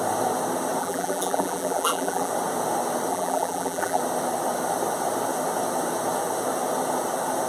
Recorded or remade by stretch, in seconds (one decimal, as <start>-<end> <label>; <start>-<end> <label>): 0.0-0.8 recorded; 0.8-2.3 remade; 2.3-3.1 recorded; 3.1-4.0 remade; 4.0-7.5 recorded